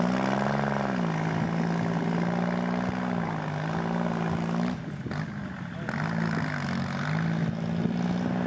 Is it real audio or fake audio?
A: real